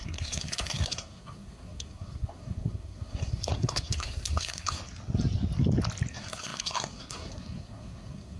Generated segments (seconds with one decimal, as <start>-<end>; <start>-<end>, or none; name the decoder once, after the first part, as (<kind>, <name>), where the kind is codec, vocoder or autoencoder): 0.0-4.8 (codec, SNAC); 6.1-8.4